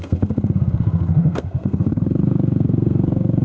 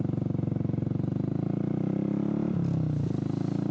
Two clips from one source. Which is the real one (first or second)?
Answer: second